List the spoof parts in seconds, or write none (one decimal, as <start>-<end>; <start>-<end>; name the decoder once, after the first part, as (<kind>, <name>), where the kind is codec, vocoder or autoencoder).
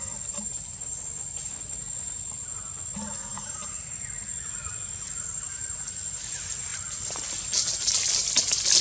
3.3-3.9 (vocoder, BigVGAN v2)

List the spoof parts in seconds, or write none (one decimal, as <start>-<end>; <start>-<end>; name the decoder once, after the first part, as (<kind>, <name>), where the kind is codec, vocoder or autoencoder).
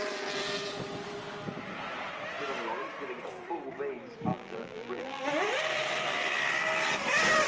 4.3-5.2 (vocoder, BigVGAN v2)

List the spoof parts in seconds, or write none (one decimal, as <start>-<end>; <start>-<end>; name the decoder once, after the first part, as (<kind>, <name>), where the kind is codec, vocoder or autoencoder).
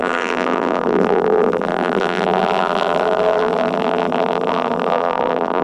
0.0-5.6 (vocoder, BigVGAN v2)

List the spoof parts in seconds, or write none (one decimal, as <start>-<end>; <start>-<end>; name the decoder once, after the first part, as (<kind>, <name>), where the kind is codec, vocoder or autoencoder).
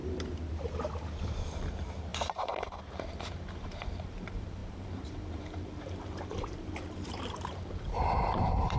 1.3-8.8 (vocoder, BigVGAN v2)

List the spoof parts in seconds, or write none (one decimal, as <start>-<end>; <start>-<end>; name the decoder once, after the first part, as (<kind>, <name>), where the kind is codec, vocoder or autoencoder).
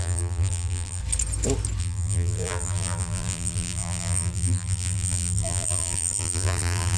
0.0-1.0 (vocoder, BigVGAN v2); 1.8-7.0